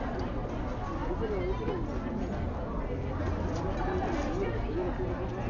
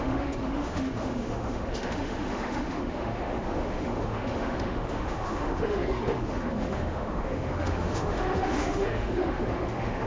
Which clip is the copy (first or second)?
second